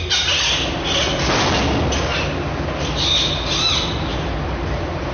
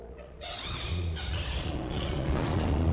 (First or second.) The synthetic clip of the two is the second